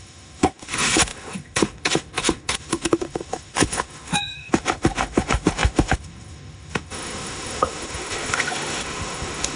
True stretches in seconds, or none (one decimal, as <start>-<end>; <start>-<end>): none